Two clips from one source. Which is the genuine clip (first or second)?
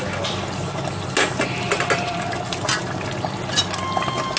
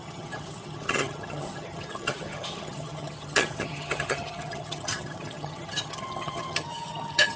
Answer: first